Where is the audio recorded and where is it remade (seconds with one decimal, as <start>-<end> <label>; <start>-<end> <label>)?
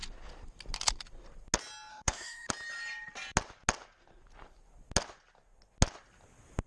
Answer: 0.0-1.9 recorded; 1.9-2.5 remade; 2.5-6.7 recorded